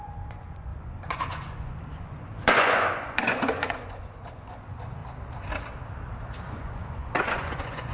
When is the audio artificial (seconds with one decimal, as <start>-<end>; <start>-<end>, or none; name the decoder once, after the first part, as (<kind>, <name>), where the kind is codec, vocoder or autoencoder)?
0.0-5.0 (vocoder, Vocos); 6.4-7.9